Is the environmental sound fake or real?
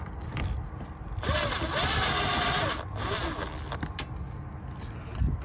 real